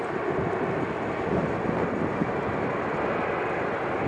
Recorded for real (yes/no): yes